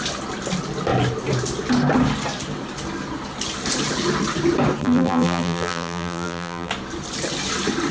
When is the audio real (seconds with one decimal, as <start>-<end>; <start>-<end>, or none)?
0.0-4.8; 6.7-7.9